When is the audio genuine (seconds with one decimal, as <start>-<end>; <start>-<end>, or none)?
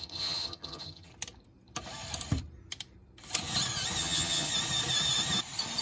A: 1.1-4.0; 4.5-5.8